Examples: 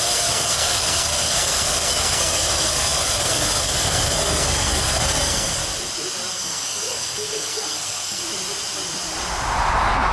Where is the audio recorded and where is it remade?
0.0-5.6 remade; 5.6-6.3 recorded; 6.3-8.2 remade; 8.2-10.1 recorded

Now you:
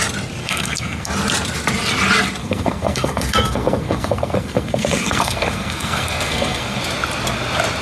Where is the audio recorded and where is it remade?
0.0-0.4 recorded; 0.4-1.1 remade; 1.1-2.4 recorded; 2.4-6.8 remade; 6.8-7.8 recorded

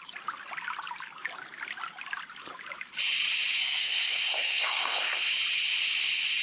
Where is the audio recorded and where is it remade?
0.0-3.6 recorded; 3.6-5.3 remade; 5.3-6.4 recorded